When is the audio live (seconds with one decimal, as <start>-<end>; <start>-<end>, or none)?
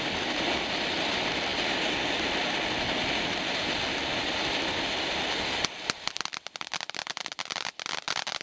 0.0-8.4